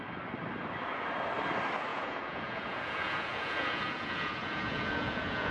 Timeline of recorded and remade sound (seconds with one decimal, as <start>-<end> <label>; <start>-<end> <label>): 0.0-1.9 recorded; 1.9-5.5 remade

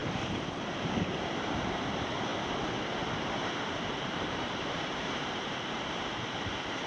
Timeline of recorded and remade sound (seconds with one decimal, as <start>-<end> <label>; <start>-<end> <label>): 0.0-2.3 remade; 2.3-3.1 recorded; 3.1-6.9 remade

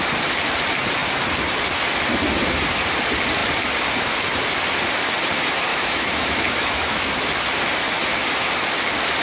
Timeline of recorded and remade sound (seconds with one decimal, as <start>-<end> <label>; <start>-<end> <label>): 0.0-5.7 recorded; 5.7-7.1 remade; 7.1-9.2 recorded

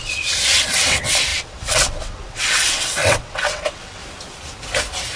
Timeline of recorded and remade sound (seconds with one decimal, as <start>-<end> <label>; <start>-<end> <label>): 0.0-4.0 remade; 4.0-5.2 recorded

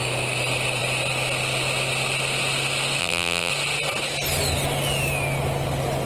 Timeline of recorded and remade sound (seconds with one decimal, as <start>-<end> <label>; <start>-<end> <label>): 0.0-3.0 recorded; 3.0-3.5 remade; 3.5-6.1 recorded

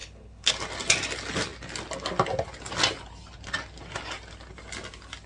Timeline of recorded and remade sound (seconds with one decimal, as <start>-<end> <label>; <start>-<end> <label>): 0.0-0.5 remade; 0.5-5.3 recorded

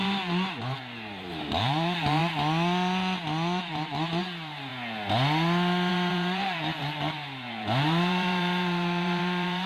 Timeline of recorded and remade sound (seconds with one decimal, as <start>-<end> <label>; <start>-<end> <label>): 0.0-2.2 remade; 2.2-3.6 recorded; 3.6-4.7 remade; 4.7-5.9 recorded; 5.9-9.7 remade